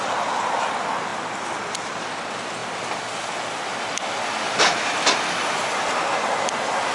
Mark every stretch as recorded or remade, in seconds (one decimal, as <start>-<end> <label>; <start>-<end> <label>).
0.0-6.9 recorded